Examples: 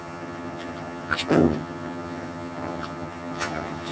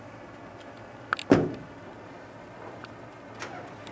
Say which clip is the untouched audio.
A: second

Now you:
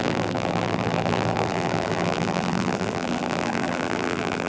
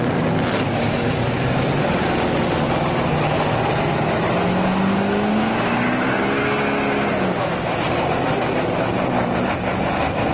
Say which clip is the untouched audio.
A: second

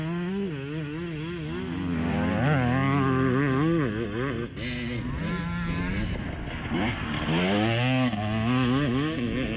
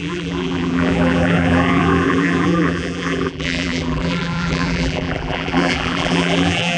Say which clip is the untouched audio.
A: first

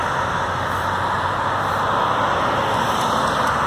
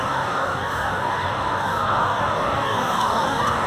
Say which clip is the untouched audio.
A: first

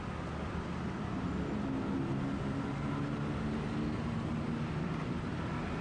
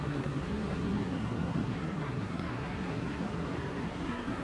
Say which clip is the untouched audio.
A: first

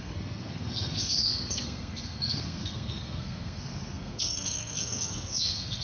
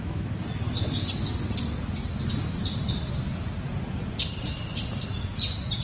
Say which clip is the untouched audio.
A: second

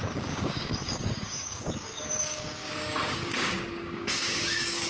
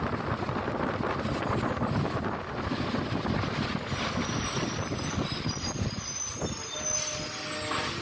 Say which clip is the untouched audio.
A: second